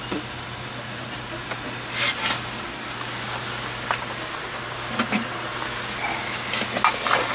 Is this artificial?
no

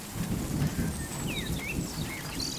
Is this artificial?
no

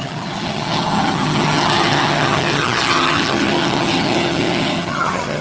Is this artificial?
yes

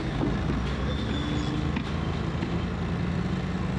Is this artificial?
no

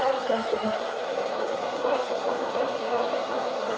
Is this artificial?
yes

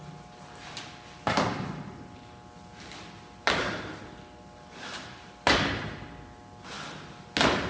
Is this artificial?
no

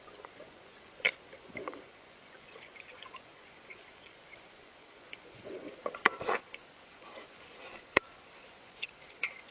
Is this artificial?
yes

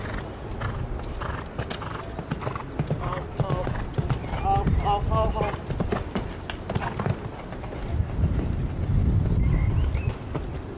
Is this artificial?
no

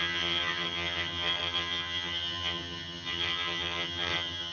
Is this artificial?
yes